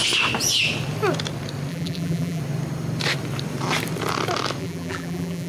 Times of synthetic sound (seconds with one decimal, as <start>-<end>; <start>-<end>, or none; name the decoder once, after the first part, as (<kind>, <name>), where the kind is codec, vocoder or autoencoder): 1.7-2.4 (vocoder, BigVGAN v2); 4.6-5.5